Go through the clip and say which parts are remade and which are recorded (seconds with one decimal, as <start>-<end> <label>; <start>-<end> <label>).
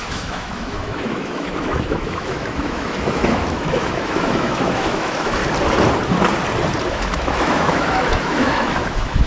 0.0-5.4 remade; 5.4-6.9 recorded; 6.9-9.3 remade